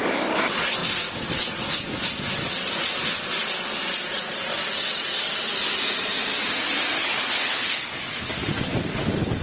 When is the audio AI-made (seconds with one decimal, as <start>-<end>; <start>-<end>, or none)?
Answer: 7.0-8.3